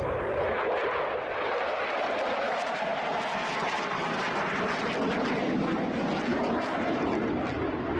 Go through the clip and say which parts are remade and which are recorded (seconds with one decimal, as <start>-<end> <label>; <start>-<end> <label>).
0.0-6.3 recorded; 6.3-7.2 remade; 7.2-8.0 recorded